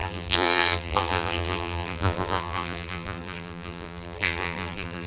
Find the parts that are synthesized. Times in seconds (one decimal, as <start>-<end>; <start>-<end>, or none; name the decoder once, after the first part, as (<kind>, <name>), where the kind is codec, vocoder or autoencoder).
0.0-5.1 (vocoder, BigVGAN v2)